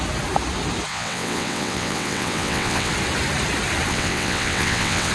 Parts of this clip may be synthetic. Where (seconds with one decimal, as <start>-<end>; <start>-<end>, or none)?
0.9-2.9; 3.9-5.1